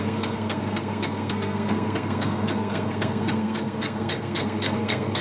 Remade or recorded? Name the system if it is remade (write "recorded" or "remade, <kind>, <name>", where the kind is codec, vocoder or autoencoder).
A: remade, codec, SNAC